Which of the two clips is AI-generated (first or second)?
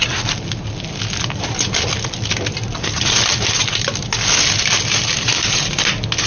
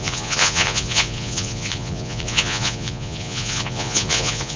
second